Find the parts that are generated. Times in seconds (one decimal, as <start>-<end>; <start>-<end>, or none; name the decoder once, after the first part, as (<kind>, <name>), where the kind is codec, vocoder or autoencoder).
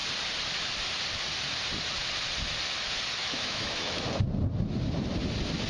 3.2-4.0 (autoencoder, DAC-VAE)